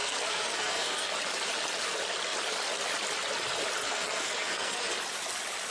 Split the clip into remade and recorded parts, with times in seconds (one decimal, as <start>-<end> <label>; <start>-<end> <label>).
0.0-1.1 remade; 1.1-3.8 recorded; 3.8-4.9 remade; 4.9-5.7 recorded